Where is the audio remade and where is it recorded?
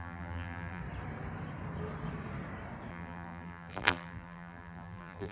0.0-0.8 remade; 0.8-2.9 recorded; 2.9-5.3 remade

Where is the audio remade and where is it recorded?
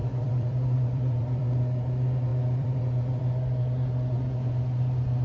0.0-1.6 remade; 1.6-2.3 recorded; 2.3-3.2 remade; 3.2-5.2 recorded